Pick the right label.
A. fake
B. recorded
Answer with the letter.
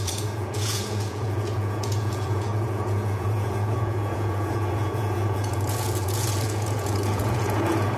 A